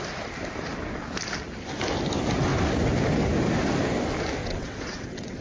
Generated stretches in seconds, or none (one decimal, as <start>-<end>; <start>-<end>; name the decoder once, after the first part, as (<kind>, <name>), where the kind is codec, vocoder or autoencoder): 4.4-5.4 (vocoder, WaveNeXt)